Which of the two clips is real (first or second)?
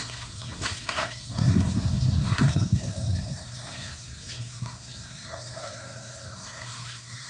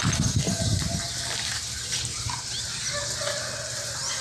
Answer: second